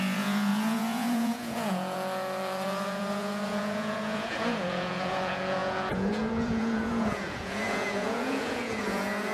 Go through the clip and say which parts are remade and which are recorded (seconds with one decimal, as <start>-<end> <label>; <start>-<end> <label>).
0.0-9.3 remade